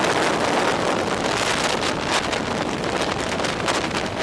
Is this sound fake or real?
real